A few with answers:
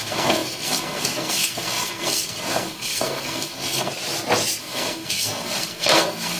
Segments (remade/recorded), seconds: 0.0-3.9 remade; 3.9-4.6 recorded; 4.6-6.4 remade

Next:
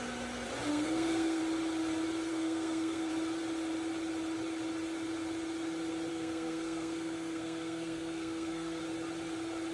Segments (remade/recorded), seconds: 0.0-0.7 recorded; 0.7-1.4 remade; 1.4-2.3 recorded; 2.3-3.1 remade; 3.1-6.1 recorded; 6.1-8.8 remade; 8.8-9.7 recorded

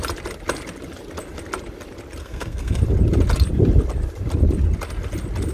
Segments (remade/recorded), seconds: 0.0-2.2 recorded; 2.2-2.8 remade; 2.8-5.5 recorded